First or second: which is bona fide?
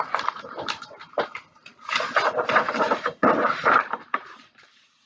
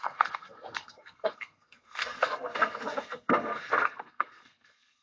first